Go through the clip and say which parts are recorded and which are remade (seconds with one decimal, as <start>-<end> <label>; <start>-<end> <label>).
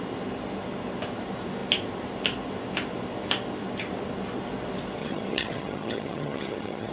0.0-5.0 recorded; 5.0-6.9 remade